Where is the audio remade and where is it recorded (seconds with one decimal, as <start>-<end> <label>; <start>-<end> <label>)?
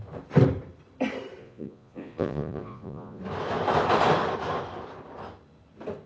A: 0.0-1.4 recorded; 1.4-3.2 remade; 3.2-6.1 recorded